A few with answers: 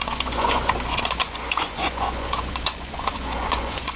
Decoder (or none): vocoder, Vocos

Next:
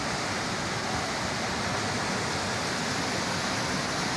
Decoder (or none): none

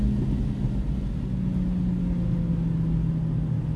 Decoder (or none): none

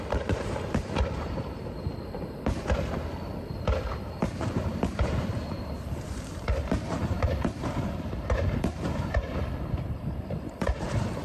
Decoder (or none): vocoder, BigVGAN v2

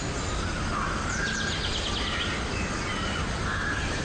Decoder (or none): none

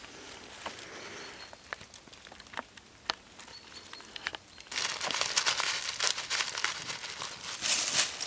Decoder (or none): none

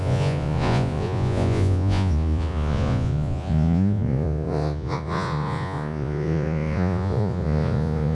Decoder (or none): vocoder, Vocos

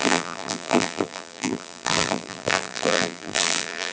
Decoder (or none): vocoder, BigVGAN v2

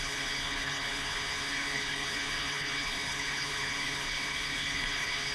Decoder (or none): codec, HILCodec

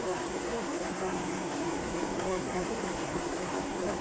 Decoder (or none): codec, SNAC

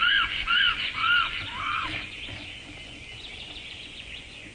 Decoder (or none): vocoder, Vocos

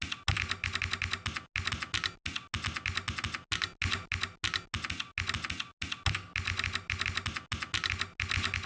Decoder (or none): none